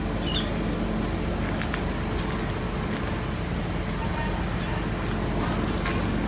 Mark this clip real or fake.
real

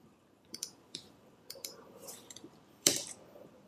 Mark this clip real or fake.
fake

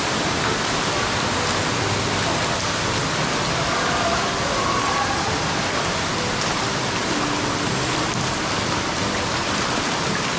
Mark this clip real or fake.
real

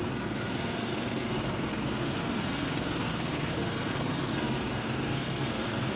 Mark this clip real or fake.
fake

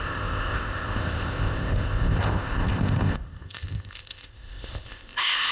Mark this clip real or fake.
fake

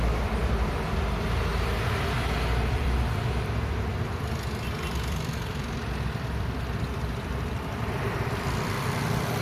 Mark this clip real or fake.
fake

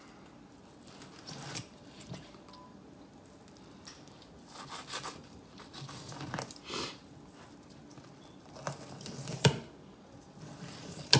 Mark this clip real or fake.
real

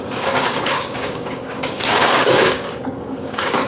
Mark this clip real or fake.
fake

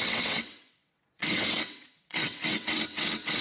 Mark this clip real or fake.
fake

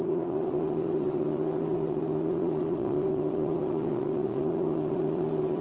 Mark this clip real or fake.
fake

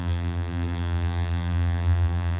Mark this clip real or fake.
fake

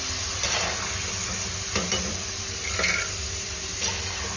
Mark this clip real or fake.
real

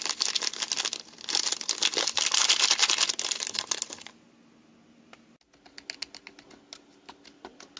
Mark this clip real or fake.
real